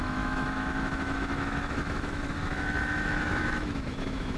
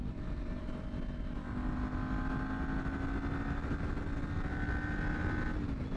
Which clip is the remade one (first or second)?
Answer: first